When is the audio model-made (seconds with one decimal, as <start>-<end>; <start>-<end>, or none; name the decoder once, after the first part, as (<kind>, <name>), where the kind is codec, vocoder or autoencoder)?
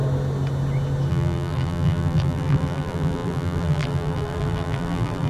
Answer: 1.1-5.3 (vocoder, BigVGAN v2)